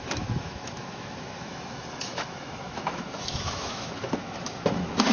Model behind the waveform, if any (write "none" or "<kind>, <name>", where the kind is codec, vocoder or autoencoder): autoencoder, DAC-VAE